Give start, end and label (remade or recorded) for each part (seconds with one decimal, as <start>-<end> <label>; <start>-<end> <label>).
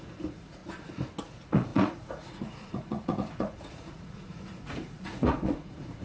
0.0-0.6 remade; 0.6-1.2 recorded; 1.2-6.0 remade